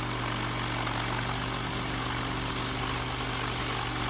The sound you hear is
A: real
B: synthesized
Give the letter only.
A